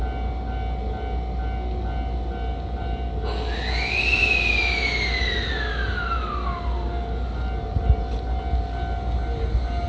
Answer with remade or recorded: recorded